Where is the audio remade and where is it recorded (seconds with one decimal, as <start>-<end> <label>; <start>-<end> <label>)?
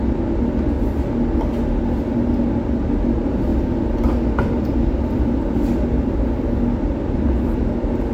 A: 0.0-3.5 recorded; 3.5-5.2 remade; 5.2-8.1 recorded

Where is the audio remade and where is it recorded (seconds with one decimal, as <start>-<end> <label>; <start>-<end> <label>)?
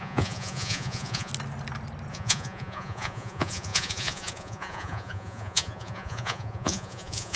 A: 0.0-1.3 remade; 1.3-2.1 recorded; 2.1-7.4 remade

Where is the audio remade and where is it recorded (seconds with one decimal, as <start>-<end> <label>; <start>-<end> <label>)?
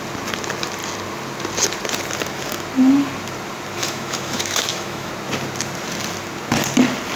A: 0.0-3.8 recorded; 3.8-5.1 remade; 5.1-7.2 recorded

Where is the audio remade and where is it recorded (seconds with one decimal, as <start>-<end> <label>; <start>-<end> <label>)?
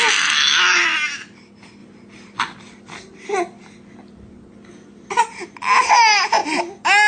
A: 0.0-7.1 recorded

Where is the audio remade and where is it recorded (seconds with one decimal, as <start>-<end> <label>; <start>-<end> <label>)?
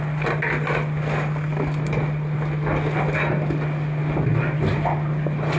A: 0.0-5.6 recorded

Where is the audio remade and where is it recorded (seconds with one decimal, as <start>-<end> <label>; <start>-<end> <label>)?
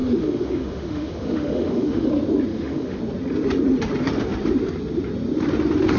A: 0.0-2.1 remade; 2.1-2.5 recorded; 2.5-3.0 remade; 3.0-6.0 recorded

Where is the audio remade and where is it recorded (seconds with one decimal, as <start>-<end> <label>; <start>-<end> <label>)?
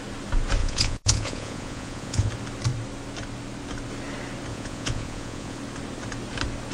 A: 0.0-0.6 recorded; 0.6-2.3 remade; 2.3-4.5 recorded; 4.5-5.6 remade; 5.6-6.7 recorded